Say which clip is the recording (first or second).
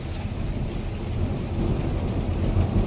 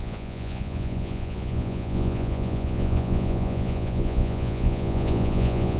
first